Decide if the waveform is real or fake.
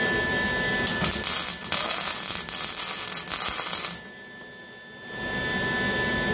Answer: real